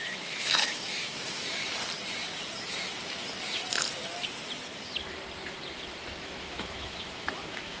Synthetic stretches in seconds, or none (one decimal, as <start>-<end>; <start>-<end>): 0.0-1.6; 6.2-7.8